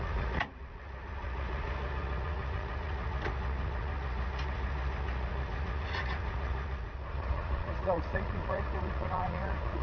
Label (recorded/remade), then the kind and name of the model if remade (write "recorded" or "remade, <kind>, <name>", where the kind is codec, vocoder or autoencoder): remade, vocoder, Vocos